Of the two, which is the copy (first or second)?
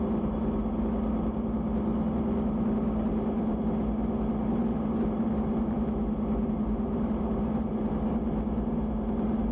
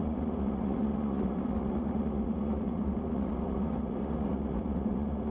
second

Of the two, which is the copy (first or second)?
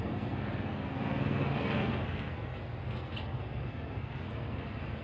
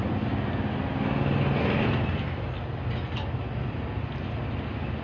first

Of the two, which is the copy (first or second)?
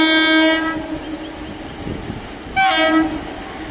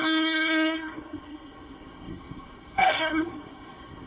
second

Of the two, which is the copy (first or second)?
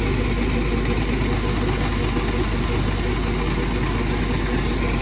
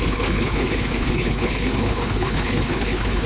second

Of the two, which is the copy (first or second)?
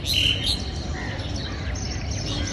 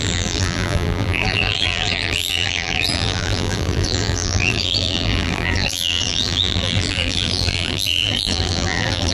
second